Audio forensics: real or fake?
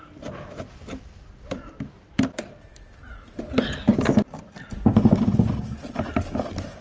real